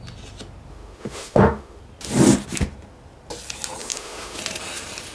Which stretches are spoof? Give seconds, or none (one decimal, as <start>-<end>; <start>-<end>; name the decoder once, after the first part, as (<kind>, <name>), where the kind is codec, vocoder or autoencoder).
0.7-1.8 (autoencoder, DAC-VAE); 3.8-4.4